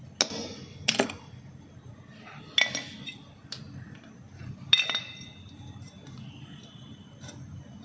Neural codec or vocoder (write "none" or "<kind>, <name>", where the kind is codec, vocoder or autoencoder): none